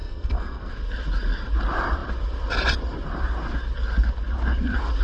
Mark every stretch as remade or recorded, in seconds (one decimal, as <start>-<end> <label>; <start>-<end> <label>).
0.0-0.7 remade; 0.7-5.0 recorded